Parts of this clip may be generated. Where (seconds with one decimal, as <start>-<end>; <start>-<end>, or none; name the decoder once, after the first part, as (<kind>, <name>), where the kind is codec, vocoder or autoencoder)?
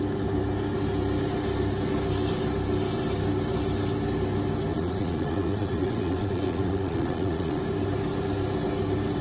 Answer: 4.7-7.6 (vocoder, Vocos)